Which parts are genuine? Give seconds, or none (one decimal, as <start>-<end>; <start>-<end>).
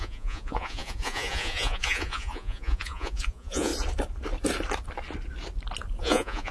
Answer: 3.7-6.0